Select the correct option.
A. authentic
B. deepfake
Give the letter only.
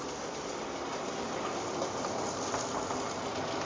A